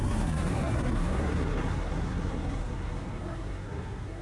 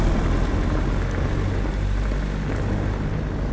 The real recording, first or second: second